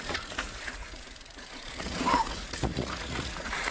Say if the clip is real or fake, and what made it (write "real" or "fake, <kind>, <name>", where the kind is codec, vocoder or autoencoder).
fake, vocoder, Vocos